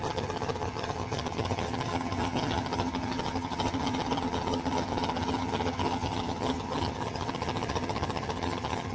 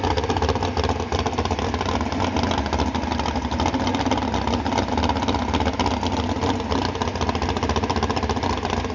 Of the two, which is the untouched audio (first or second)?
second